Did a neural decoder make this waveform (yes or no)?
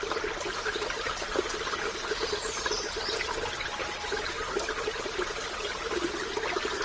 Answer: no